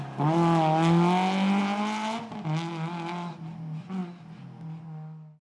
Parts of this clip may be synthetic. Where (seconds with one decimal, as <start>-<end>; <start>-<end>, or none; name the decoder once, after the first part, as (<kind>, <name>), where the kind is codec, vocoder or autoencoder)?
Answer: none